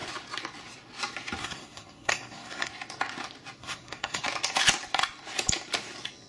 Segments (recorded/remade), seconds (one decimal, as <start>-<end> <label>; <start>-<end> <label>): 0.0-1.4 recorded; 1.4-2.7 remade; 2.7-3.6 recorded; 3.6-4.2 remade; 4.2-6.3 recorded